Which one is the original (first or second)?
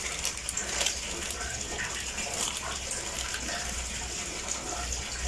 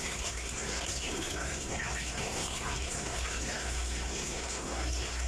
first